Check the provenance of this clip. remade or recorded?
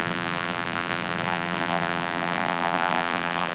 remade